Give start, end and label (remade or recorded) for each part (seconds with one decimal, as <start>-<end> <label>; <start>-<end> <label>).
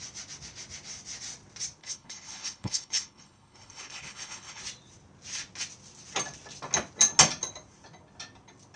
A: 0.0-1.8 recorded; 1.8-4.6 remade; 4.6-8.8 recorded